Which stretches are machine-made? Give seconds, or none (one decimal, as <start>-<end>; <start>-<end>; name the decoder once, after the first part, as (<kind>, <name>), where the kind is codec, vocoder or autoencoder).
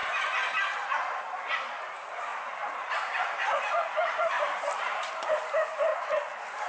1.9-5.9 (vocoder, BigVGAN v2)